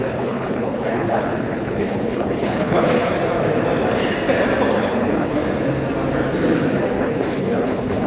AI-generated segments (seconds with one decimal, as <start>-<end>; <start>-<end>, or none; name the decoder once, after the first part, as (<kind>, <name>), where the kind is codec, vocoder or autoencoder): 0.0-3.1 (codec, HILCodec); 4.7-5.4; 7.0-8.1